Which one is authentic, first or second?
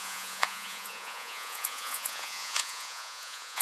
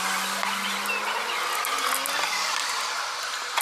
second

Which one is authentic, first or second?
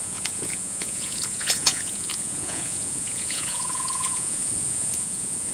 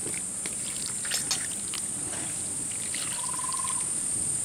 second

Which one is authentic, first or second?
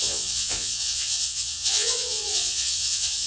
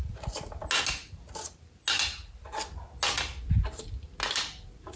second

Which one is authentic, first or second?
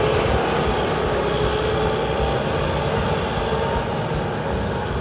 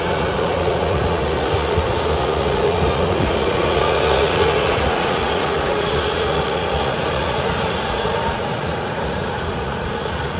first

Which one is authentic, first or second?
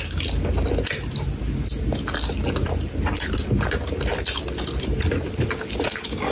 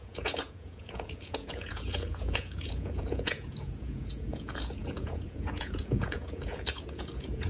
first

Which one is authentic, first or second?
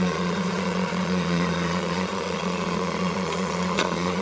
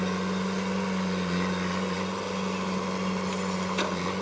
second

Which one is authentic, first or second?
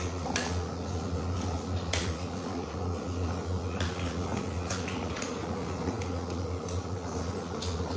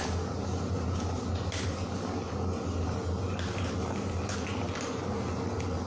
second